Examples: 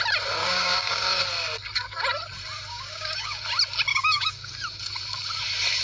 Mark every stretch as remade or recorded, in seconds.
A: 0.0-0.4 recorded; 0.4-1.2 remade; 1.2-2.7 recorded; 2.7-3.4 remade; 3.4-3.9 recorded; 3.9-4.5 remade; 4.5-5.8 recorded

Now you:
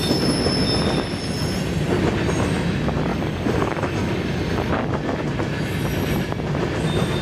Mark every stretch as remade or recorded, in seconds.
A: 0.0-3.1 recorded; 3.1-4.7 remade; 4.7-7.2 recorded